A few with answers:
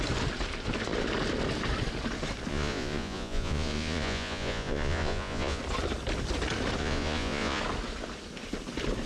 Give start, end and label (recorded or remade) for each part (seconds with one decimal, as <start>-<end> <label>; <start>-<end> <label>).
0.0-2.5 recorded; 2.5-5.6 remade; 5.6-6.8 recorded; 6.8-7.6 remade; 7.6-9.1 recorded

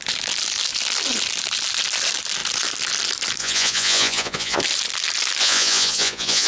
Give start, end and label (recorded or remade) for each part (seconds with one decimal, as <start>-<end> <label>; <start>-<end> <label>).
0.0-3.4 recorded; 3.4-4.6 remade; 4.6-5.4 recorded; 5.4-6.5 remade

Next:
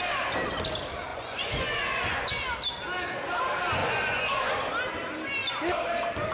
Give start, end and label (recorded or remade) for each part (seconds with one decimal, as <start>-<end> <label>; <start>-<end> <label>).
0.0-1.1 recorded; 1.1-2.3 remade; 2.3-3.8 recorded; 3.8-4.5 remade; 4.5-6.3 recorded